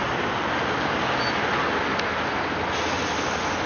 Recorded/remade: recorded